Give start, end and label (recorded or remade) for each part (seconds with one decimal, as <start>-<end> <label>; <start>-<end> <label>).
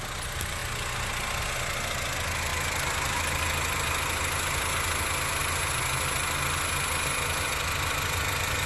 0.0-8.7 recorded